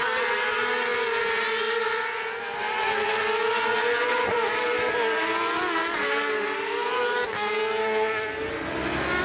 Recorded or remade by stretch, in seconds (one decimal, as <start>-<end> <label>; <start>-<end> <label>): 0.0-9.2 recorded